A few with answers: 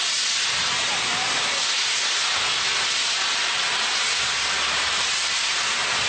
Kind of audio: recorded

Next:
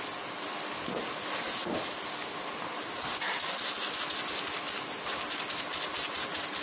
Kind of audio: recorded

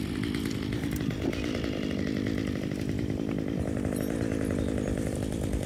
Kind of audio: recorded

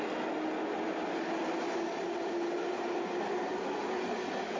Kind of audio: recorded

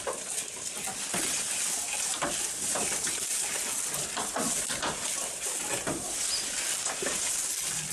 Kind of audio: recorded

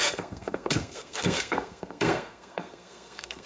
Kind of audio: remade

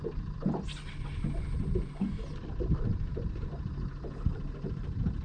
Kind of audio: recorded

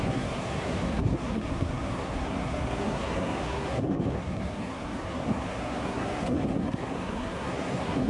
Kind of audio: remade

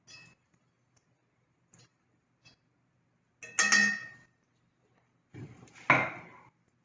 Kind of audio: recorded